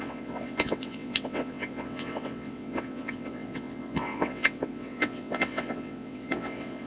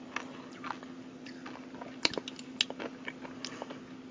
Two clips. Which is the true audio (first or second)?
second